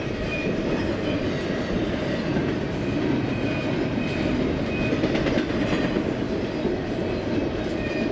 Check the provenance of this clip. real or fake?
real